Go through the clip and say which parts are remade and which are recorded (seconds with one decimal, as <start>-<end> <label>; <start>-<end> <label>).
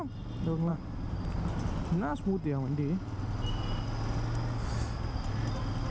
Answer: 0.0-0.7 recorded; 0.7-1.6 remade; 1.6-5.9 recorded